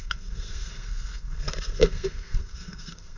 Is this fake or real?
fake